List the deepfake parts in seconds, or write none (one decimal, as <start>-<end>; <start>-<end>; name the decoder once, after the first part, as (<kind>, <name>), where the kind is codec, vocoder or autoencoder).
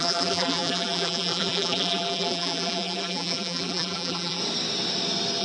0.0-4.4 (vocoder, BigVGAN v2)